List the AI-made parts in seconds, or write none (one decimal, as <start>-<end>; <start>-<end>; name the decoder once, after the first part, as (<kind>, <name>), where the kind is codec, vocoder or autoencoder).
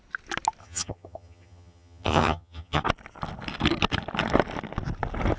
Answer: 0.6-2.8 (vocoder, HiFi-GAN)